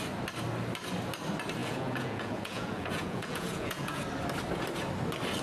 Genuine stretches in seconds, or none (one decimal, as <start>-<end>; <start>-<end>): 0.0-1.6; 4.0-5.4

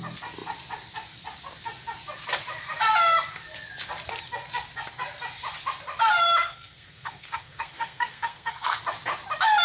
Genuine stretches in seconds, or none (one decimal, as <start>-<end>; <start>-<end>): 0.0-6.4; 8.8-9.6

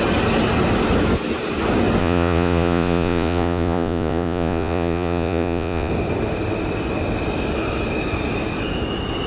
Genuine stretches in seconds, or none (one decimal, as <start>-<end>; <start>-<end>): 0.0-2.0; 5.9-9.3

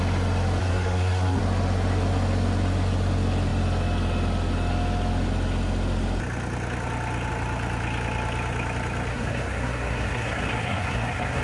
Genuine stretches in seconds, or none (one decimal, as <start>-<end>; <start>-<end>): 0.0-0.6; 1.4-9.1

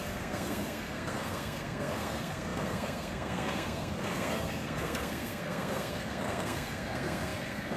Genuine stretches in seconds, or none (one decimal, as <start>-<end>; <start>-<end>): none

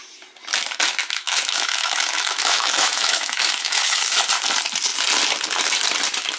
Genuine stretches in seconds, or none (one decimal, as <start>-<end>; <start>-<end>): 0.0-1.0; 4.1-6.4